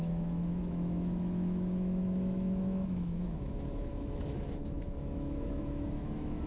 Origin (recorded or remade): remade